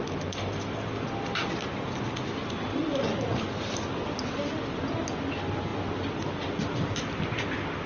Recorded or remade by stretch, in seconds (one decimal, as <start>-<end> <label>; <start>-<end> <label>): 0.0-7.9 recorded